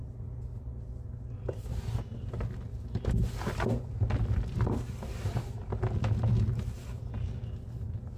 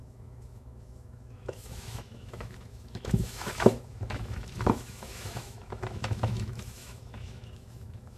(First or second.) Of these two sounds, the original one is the first